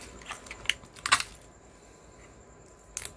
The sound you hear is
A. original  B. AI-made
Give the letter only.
A